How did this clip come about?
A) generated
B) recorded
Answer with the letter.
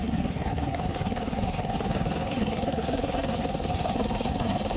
A